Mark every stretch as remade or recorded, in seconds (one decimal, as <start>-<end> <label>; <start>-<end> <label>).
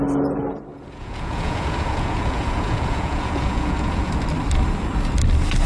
0.0-0.7 recorded; 0.7-4.1 remade; 4.1-5.7 recorded